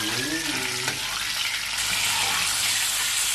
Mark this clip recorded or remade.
recorded